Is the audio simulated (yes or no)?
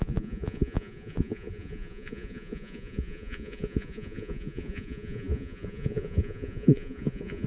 yes